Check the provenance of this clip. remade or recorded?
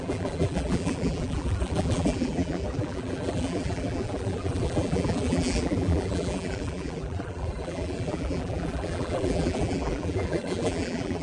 remade